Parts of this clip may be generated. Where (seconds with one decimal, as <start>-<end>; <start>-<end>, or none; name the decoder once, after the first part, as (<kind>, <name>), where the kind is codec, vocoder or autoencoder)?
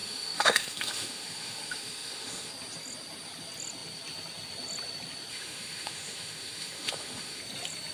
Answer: 0.0-2.5 (autoencoder, DAC-VAE); 5.3-7.4